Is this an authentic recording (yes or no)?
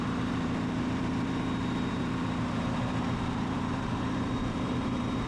no